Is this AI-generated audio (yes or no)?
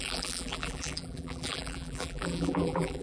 yes